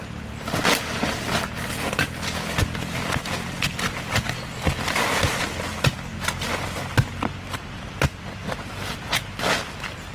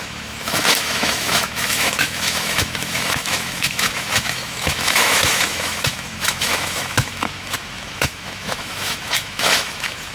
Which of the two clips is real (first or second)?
first